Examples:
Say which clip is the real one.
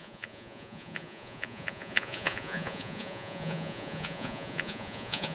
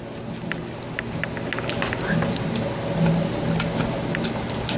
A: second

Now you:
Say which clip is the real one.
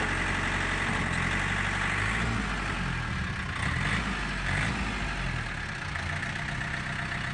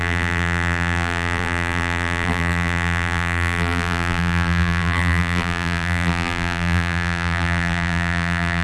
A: first